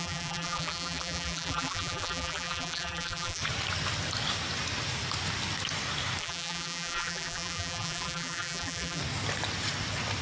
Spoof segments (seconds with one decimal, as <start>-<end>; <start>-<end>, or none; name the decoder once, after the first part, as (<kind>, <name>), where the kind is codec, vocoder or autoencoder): 0.0-3.4 (vocoder, BigVGAN v2); 6.2-9.0